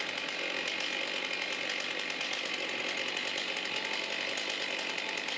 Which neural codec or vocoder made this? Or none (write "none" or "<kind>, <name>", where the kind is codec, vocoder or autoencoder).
none